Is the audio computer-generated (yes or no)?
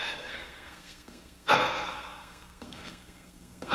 yes